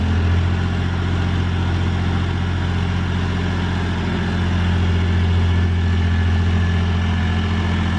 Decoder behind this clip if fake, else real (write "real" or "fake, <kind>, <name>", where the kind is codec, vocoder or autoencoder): real